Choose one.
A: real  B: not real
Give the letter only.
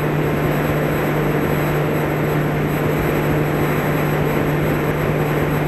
A